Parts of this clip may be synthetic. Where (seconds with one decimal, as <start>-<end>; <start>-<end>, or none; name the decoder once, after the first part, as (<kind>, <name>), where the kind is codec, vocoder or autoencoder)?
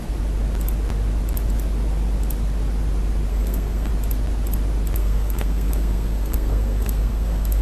3.3-3.9 (codec, SNAC); 5.0-7.6